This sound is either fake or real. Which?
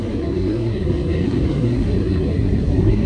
fake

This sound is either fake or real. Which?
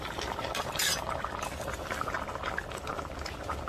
real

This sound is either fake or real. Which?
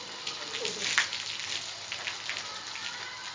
real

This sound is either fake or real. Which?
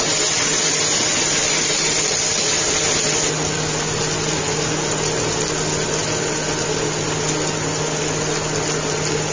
real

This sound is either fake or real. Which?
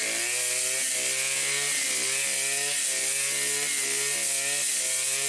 real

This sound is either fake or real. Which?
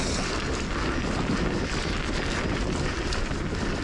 real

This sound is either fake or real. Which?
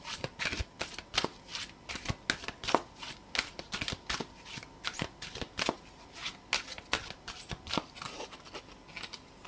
real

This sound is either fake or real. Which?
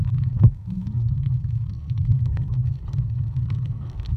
fake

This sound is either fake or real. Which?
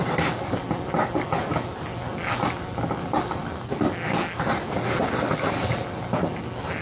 real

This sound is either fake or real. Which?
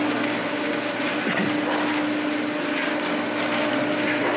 real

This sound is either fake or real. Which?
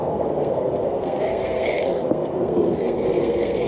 fake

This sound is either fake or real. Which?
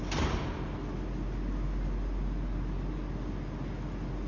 real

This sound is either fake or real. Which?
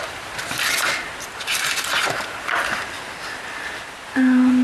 real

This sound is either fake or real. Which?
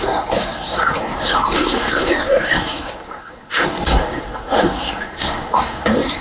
fake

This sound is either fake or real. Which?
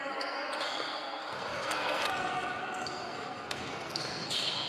fake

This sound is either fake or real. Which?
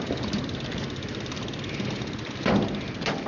real